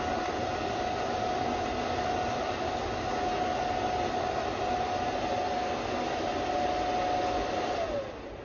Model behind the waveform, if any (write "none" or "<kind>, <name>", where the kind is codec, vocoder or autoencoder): none